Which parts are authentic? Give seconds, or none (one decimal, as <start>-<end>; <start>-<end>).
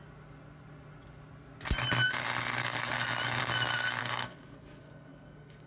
0.0-4.0